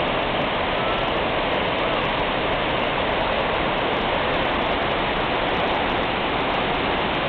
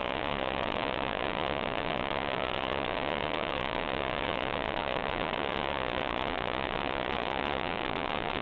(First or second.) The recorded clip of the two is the first